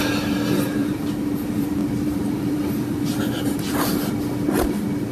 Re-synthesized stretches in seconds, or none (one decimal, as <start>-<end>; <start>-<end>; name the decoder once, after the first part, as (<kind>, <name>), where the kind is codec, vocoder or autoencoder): 0.8-3.9 (vocoder, BigVGAN v2)